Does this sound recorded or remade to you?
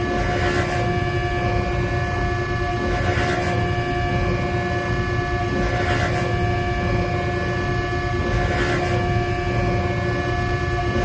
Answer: recorded